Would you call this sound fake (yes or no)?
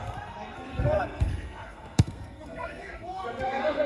yes